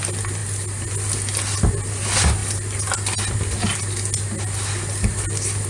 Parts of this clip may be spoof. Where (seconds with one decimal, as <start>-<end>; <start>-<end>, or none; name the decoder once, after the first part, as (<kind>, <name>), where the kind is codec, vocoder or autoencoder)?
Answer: none